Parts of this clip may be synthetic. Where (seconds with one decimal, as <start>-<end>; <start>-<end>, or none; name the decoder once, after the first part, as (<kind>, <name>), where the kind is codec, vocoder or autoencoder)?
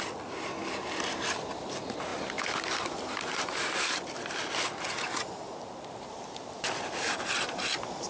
2.1-4.5 (vocoder, BigVGAN v2)